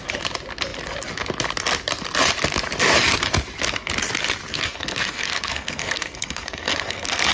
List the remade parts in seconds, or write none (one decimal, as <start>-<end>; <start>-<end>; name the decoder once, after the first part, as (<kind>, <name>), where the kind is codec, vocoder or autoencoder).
4.5-7.3 (codec, SNAC)